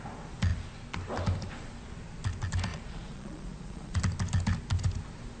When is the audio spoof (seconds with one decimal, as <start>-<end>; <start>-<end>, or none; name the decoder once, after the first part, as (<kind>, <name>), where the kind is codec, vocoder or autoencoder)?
2.7-4.0 (vocoder, Vocos)